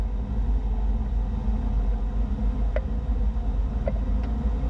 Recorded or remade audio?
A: recorded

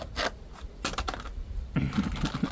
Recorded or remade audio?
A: recorded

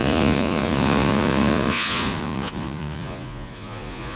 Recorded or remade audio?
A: remade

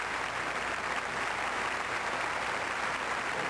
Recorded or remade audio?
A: recorded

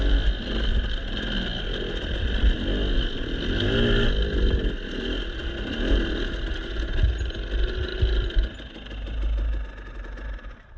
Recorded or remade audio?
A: recorded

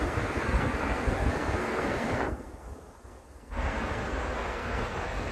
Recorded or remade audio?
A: remade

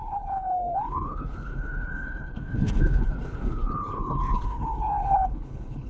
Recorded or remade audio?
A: remade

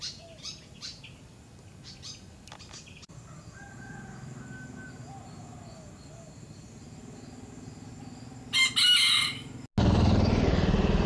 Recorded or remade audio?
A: recorded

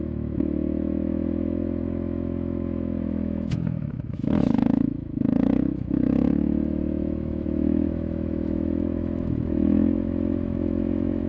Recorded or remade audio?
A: remade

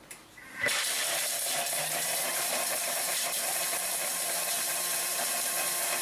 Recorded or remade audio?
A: remade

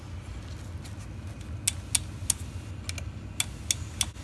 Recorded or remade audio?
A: recorded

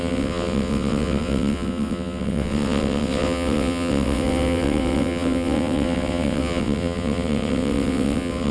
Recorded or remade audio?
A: remade